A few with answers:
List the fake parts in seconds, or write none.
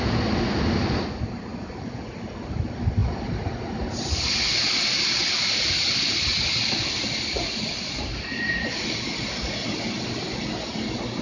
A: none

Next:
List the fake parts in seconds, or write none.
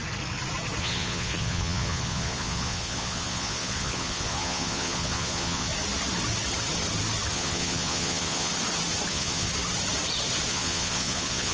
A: 0.8-5.7 (vocoder, Vocos); 7.3-8.5; 9.1-9.5; 10.5-11.5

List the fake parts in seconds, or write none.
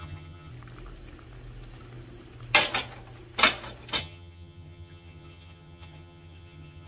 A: 0.0-0.5 (vocoder, HiFi-GAN); 4.0-6.9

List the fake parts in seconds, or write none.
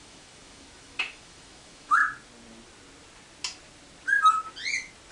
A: 0.0-2.0 (autoencoder, DAC-VAE)